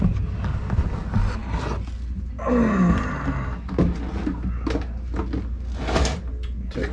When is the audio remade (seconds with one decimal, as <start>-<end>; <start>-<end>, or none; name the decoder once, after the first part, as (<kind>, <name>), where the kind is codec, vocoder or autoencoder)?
none